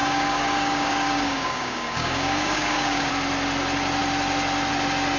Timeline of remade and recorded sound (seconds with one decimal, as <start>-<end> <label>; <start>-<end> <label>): 0.0-3.1 remade; 3.1-5.2 recorded